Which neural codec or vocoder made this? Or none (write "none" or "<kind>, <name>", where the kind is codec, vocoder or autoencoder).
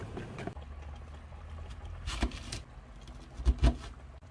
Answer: none